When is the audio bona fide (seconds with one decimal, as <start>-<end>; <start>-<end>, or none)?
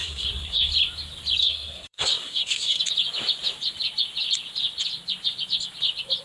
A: 0.7-1.4; 2.8-6.2